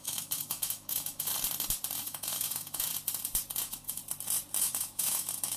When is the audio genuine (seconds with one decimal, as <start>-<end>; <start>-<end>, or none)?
1.3-2.0; 2.9-3.6; 4.0-4.6